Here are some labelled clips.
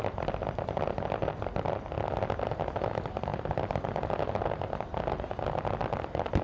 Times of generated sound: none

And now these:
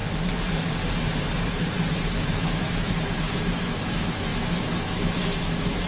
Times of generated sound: 2.0-5.9 (autoencoder, DAC-VAE)